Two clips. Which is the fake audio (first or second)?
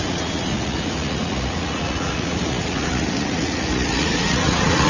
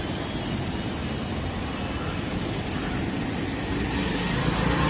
first